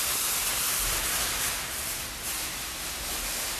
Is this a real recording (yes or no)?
yes